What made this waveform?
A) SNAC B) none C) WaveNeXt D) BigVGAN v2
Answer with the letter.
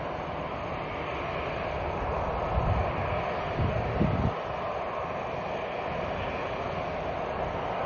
B